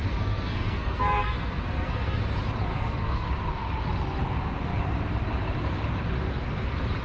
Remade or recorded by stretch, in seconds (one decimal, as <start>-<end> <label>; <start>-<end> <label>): 0.0-2.2 remade; 2.2-2.7 recorded; 2.7-3.3 remade; 3.3-7.0 recorded